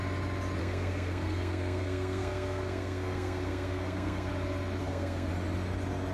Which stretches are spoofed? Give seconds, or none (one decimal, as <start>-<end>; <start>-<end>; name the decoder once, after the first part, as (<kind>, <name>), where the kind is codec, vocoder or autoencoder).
0.6-4.3 (codec, SNAC); 4.8-5.3